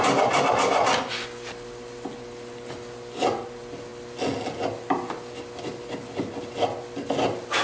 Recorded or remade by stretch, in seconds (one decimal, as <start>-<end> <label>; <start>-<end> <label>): 0.0-7.6 recorded